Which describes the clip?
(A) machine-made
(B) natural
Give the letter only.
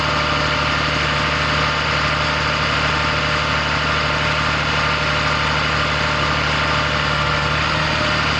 B